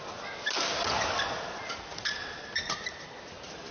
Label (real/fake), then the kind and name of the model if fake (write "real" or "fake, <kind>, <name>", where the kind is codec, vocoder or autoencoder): real